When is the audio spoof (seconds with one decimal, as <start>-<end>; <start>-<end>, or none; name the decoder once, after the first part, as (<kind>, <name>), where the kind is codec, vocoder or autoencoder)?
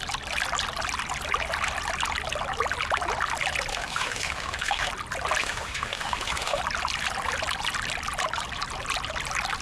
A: 3.7-4.9 (autoencoder, DAC-VAE); 5.4-6.6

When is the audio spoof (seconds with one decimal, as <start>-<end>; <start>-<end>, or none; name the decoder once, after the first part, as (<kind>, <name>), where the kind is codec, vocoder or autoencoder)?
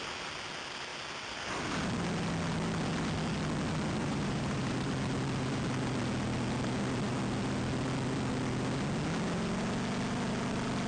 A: 4.0-4.9 (vocoder, BigVGAN v2)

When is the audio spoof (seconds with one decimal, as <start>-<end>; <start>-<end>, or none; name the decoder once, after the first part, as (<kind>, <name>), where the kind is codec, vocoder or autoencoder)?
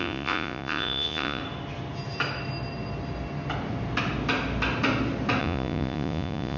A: 0.0-1.4 (vocoder, Vocos); 5.4-6.6